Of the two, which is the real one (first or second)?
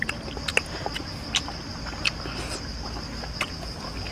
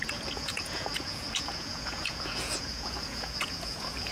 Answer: first